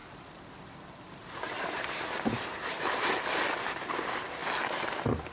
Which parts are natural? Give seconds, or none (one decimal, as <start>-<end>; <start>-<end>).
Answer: 0.0-5.3